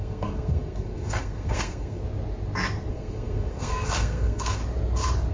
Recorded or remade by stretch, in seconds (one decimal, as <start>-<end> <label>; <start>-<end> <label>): 0.0-2.0 remade; 2.0-2.9 recorded; 2.9-4.6 remade; 4.6-5.3 recorded